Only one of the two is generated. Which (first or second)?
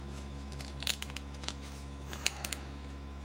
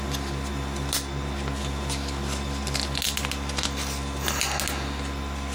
first